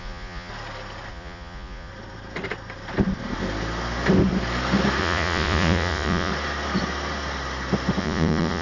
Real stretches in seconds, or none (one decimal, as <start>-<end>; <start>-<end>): 0.5-1.1; 1.9-5.0; 6.3-8.0